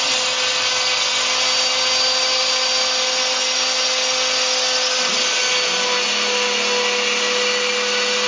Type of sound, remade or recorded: recorded